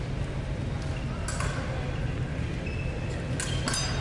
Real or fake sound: real